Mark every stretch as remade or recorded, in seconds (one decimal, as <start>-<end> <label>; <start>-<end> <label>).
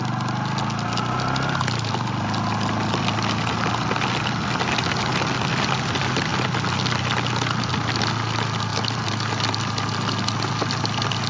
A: 0.0-11.3 recorded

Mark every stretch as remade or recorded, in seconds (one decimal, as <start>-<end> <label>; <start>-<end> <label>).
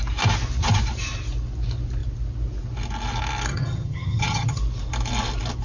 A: 0.0-3.5 recorded; 3.5-4.6 remade; 4.6-5.6 recorded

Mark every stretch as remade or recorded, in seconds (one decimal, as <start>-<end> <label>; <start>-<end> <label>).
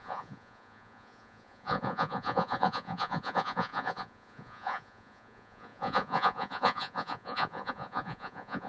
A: 0.0-8.7 remade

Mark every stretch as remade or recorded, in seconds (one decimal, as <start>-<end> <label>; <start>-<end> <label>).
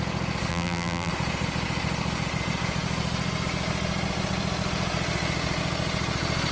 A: 0.0-0.5 recorded; 0.5-1.1 remade; 1.1-6.5 recorded